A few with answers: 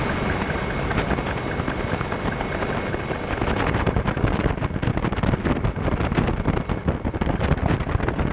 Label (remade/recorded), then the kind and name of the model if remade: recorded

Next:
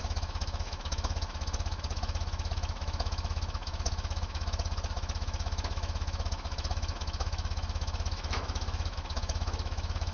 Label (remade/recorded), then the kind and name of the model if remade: remade, autoencoder, DAC-VAE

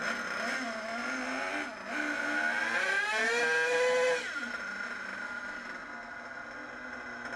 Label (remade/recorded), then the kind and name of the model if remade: recorded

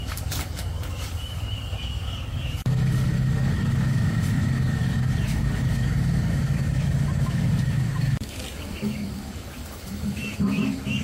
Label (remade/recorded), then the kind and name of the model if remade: remade, codec, DAC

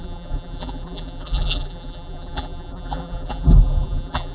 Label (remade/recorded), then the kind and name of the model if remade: remade, vocoder, BigVGAN v2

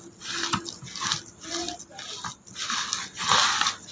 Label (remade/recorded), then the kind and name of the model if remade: recorded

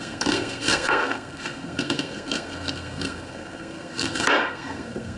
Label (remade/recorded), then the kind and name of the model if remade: remade, codec, SNAC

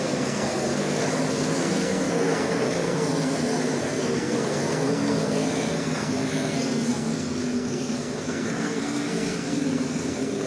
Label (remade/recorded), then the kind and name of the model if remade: remade, codec, SNAC